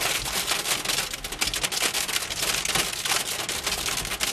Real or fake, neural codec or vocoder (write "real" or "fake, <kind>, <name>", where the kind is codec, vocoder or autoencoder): real